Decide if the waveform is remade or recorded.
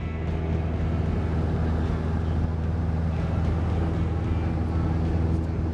recorded